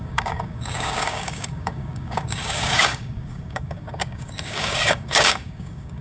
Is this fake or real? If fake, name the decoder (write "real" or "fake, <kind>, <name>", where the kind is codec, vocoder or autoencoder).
fake, codec, DAC